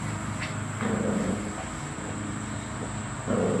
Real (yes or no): yes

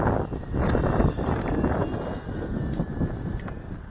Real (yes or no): yes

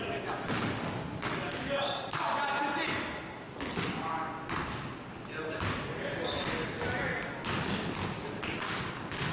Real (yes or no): yes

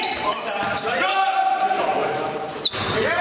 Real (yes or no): no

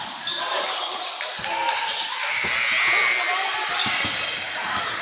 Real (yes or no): yes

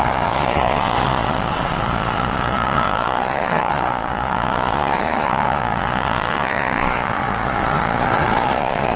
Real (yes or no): no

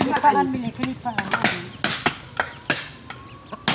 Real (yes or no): yes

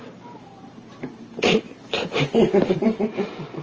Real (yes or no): no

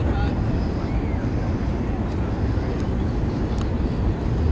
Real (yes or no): yes